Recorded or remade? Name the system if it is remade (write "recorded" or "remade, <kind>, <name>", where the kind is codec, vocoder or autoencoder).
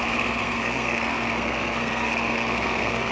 remade, codec, SNAC